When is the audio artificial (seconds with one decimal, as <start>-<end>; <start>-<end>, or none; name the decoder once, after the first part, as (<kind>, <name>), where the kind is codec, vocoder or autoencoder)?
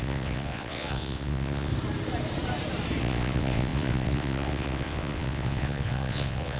0.0-1.7 (vocoder, WaveNeXt); 3.0-6.6